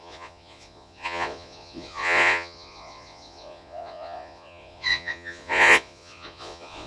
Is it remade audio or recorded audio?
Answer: remade